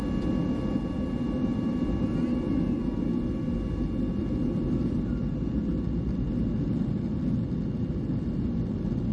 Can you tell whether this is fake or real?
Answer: real